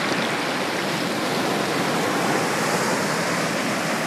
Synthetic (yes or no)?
no